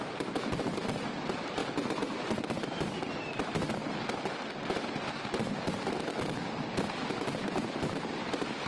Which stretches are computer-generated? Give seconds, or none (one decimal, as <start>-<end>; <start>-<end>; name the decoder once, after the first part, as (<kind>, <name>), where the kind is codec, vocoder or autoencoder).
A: 0.0-3.0 (vocoder, BigVGAN v2); 7.1-8.7